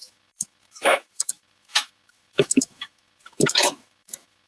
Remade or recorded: remade